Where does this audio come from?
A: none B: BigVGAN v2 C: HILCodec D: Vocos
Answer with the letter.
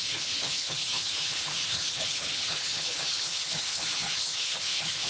C